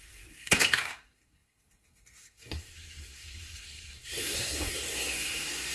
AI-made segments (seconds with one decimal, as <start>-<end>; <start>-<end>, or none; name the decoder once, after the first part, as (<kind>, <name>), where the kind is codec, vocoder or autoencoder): 0.0-5.7 (codec, SNAC)